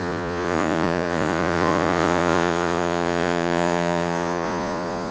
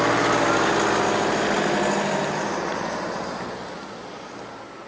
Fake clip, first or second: first